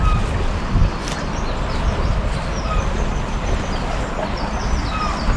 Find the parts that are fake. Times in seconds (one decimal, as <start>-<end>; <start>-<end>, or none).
none